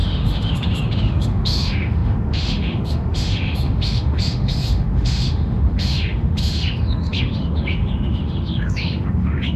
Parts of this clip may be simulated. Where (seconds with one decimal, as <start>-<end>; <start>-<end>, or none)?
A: 0.0-9.6